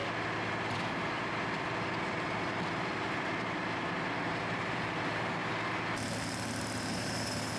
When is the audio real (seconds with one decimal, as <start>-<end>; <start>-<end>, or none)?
0.0-2.1; 3.6-4.2; 5.4-7.6